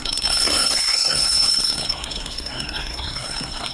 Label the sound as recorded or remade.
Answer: remade